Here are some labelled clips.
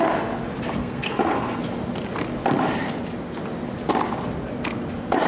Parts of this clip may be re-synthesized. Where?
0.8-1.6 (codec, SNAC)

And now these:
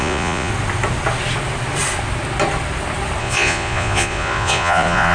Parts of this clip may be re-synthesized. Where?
0.0-0.5 (vocoder, Vocos); 3.2-5.1